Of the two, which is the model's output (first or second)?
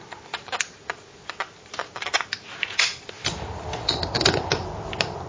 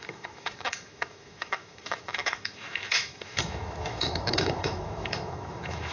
second